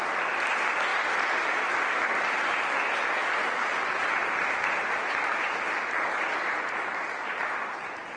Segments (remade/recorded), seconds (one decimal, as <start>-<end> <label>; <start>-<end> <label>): 0.0-8.2 recorded